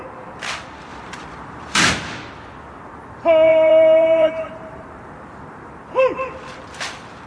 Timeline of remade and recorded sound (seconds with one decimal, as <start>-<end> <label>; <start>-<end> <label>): 0.0-0.9 recorded; 0.9-1.8 remade; 1.8-3.5 recorded; 3.5-5.7 remade; 5.7-7.3 recorded